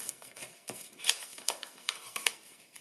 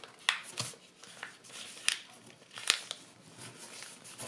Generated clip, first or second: first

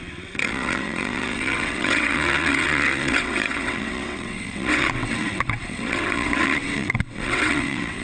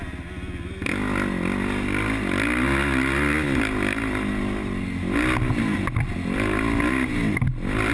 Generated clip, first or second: first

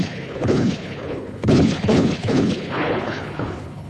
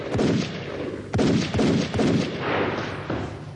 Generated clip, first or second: first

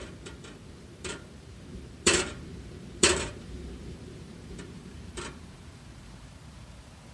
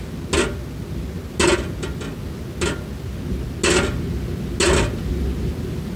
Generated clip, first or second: first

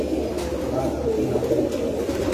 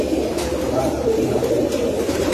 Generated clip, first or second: second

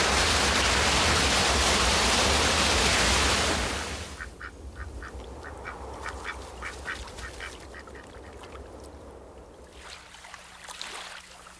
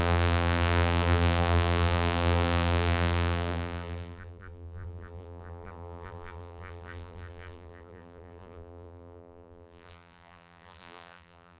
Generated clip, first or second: second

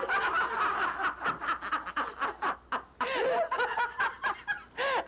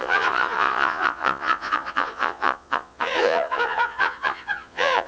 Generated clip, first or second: second